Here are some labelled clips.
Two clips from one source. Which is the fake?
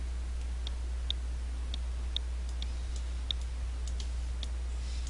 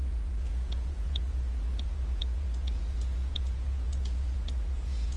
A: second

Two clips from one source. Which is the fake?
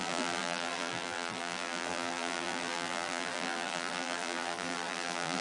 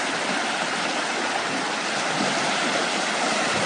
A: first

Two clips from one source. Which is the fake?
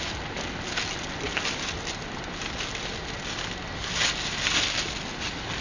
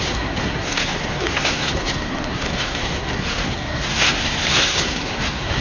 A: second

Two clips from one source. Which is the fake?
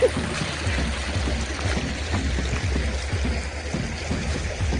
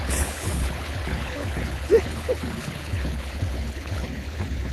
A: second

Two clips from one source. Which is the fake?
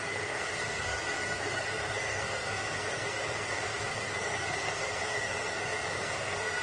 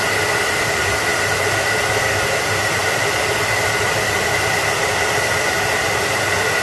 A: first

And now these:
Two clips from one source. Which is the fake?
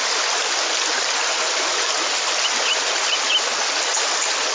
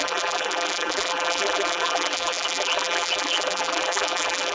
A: second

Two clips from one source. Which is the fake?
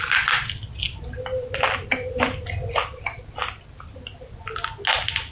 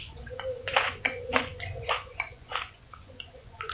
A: second